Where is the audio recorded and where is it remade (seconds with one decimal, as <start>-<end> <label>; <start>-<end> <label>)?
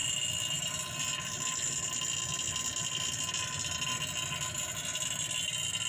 0.0-5.9 recorded